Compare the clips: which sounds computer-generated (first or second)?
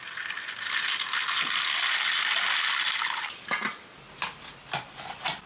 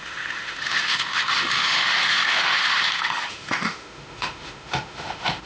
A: second